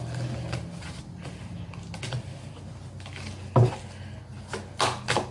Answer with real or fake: real